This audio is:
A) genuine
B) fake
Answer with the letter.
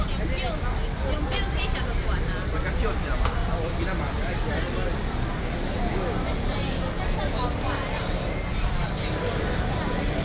A